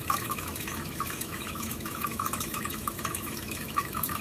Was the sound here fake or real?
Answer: fake